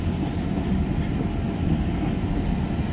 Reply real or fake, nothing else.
real